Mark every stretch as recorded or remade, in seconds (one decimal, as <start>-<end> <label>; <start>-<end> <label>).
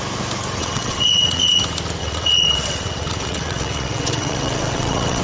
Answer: 0.0-0.6 recorded; 0.6-1.6 remade; 1.6-2.0 recorded; 2.0-5.2 remade